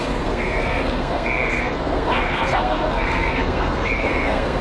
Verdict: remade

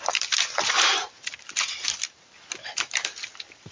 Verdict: remade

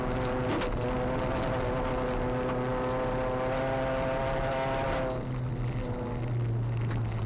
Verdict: recorded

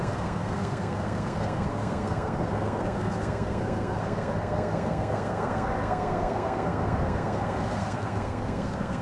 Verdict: remade